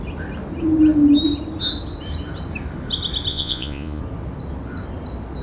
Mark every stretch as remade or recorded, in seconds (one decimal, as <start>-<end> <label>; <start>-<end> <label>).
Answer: 0.0-3.3 recorded; 3.3-4.0 remade; 4.0-5.4 recorded